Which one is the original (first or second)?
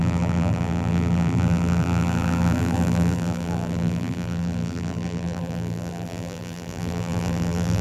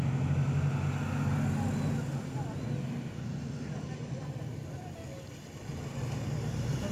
second